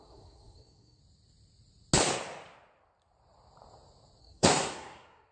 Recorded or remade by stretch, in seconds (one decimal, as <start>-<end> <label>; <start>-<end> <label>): 0.0-1.0 remade; 1.0-4.2 recorded; 4.2-5.3 remade

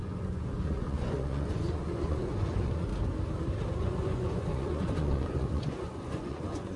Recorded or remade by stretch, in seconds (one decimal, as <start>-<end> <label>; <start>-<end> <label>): 0.0-2.9 remade; 2.9-3.7 recorded; 3.7-6.8 remade

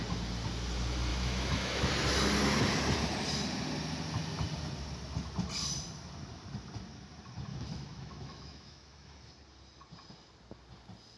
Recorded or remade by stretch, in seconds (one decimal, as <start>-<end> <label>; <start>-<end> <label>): 0.0-1.1 recorded; 1.1-1.9 remade; 1.9-7.5 recorded; 7.5-9.3 remade; 9.3-11.2 recorded

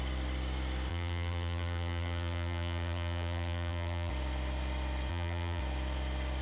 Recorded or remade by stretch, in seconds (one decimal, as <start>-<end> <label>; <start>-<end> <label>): 0.0-0.9 recorded; 0.9-4.1 remade; 4.1-5.1 recorded; 5.1-5.6 remade; 5.6-6.4 recorded

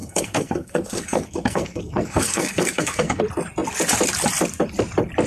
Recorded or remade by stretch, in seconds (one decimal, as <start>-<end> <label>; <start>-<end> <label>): 0.0-3.2 remade; 3.2-5.3 recorded